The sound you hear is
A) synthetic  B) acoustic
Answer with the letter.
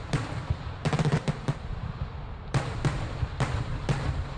A